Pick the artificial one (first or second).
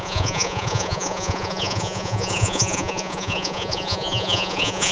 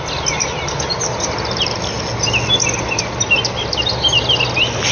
first